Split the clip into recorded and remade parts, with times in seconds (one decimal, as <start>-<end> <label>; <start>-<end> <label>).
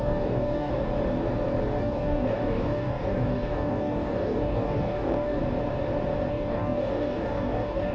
0.0-0.7 remade; 0.7-1.8 recorded; 1.8-5.4 remade; 5.4-6.3 recorded; 6.3-7.9 remade